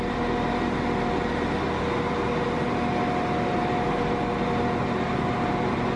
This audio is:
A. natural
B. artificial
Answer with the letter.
A